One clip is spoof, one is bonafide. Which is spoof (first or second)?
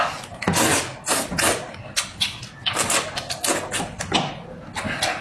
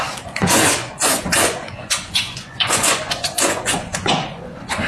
second